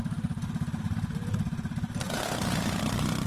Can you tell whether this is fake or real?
fake